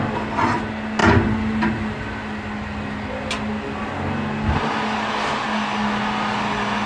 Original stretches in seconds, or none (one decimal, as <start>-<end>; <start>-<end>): 0.0-1.0; 5.1-6.9